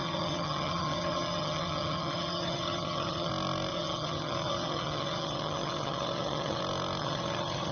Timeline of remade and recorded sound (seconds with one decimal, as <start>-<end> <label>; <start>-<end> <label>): 0.0-3.3 remade; 3.3-3.7 recorded; 3.7-6.6 remade; 6.6-7.0 recorded; 7.0-7.7 remade